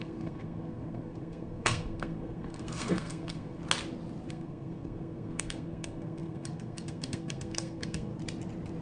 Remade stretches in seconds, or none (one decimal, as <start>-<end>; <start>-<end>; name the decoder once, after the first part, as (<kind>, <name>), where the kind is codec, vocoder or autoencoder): 0.0-3.6 (codec, SNAC); 4.3-8.1